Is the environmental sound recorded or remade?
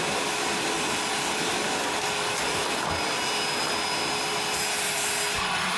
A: recorded